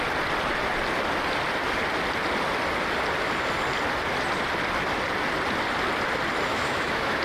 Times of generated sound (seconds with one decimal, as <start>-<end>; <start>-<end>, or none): 6.5-7.2

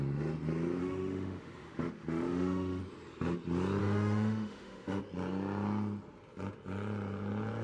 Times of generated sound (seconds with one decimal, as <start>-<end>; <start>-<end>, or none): 0.8-2.8; 3.8-5.0